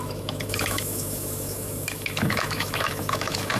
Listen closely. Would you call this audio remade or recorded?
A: remade